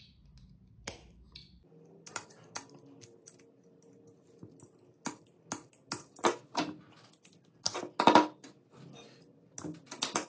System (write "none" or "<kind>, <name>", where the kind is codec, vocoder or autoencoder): none